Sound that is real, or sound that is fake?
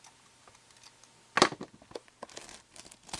real